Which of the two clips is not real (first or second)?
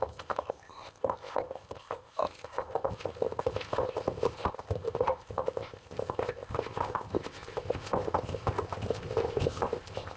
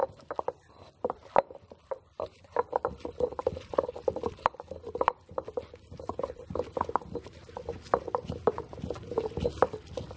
first